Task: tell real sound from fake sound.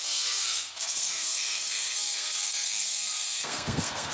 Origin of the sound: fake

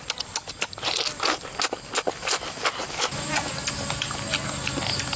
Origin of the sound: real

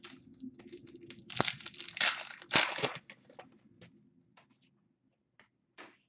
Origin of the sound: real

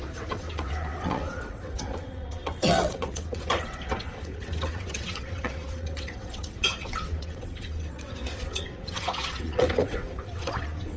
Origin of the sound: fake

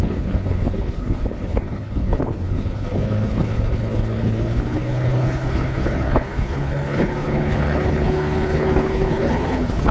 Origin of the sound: fake